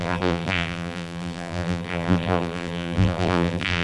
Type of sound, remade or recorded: remade